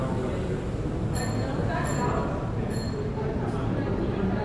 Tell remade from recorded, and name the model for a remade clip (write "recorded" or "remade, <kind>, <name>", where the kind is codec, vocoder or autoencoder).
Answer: recorded